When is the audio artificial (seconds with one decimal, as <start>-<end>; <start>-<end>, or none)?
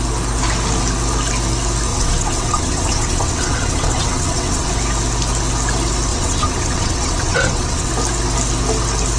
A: 1.9-4.7; 6.1-7.9